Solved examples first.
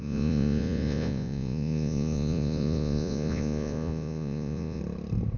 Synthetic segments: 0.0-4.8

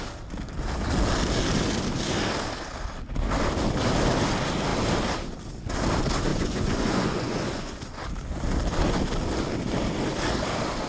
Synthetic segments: 6.3-8.0

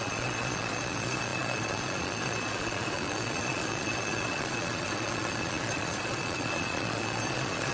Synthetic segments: 0.0-7.7

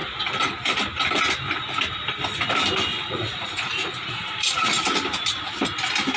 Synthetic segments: 2.9-4.8

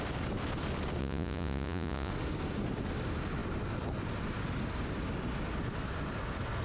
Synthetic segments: 1.0-2.1

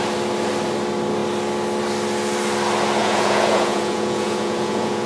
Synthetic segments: 3.0-5.1

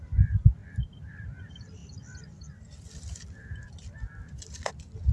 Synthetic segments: none

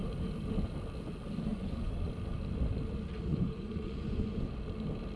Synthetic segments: 1.5-2.1; 3.3-4.5